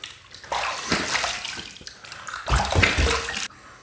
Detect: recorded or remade recorded